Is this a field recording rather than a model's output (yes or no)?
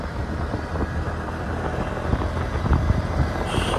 no